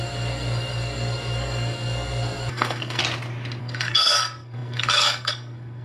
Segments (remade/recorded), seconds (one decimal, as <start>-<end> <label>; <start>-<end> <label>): 0.0-3.0 remade; 3.0-3.6 recorded; 3.6-5.8 remade